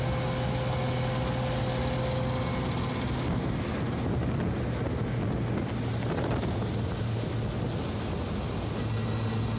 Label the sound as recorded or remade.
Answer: recorded